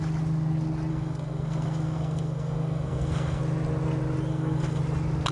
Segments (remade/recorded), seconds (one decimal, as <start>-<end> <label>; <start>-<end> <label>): 0.0-0.9 recorded; 0.9-3.4 remade; 3.4-4.3 recorded; 4.3-4.8 remade; 4.8-5.3 recorded